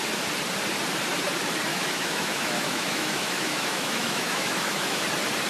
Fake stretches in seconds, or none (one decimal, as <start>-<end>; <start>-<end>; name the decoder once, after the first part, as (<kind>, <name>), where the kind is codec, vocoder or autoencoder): 1.7-5.0 (autoencoder, DAC-VAE)